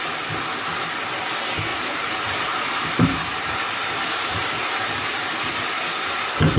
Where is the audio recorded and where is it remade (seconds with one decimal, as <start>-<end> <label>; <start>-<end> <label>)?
0.0-1.7 recorded; 1.7-5.7 remade; 5.7-6.6 recorded